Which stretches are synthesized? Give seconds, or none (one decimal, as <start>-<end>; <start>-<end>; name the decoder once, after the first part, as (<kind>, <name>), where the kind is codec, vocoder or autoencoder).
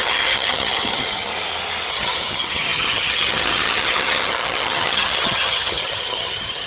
0.0-1.3 (vocoder, HiFi-GAN); 1.9-6.7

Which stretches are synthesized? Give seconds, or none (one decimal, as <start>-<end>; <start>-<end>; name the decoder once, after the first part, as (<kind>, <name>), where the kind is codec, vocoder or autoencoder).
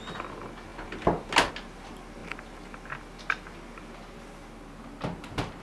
none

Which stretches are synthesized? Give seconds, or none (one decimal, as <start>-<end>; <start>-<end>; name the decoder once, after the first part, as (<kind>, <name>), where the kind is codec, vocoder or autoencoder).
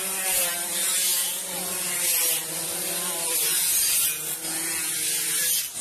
0.0-0.9 (vocoder, BigVGAN v2); 2.8-3.6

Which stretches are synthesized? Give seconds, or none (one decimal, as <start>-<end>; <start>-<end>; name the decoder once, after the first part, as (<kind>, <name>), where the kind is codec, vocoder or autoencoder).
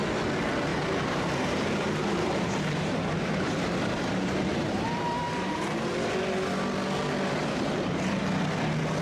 0.7-5.9 (vocoder, BigVGAN v2); 7.4-8.2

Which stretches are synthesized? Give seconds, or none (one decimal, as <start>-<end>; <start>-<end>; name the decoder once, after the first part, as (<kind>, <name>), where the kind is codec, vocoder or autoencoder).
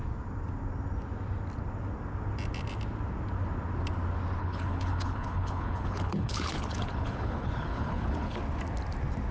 4.4-8.4 (codec, HILCodec)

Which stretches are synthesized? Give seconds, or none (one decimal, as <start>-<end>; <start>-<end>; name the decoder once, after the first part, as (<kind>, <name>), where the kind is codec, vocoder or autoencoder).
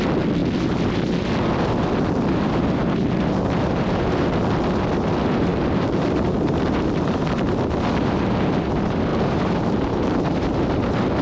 5.5-7.2 (vocoder, BigVGAN v2); 9.1-10.2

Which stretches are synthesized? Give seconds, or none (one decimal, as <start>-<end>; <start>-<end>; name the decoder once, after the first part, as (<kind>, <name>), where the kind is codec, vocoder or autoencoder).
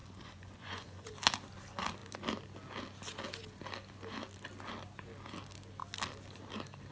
0.0-1.1 (vocoder, Vocos)